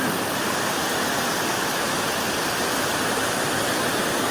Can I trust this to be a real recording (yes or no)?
yes